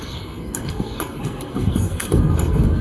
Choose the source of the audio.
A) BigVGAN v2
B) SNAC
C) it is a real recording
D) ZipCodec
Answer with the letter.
B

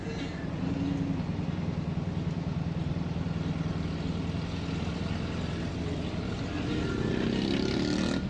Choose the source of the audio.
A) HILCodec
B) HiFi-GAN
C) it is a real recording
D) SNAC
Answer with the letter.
C